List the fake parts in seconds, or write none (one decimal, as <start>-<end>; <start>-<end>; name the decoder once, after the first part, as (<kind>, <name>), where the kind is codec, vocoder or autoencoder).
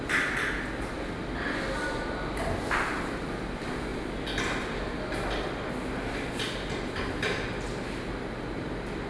none